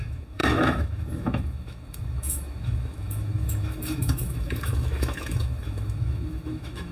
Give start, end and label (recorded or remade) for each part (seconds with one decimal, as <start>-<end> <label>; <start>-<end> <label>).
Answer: 0.0-6.9 remade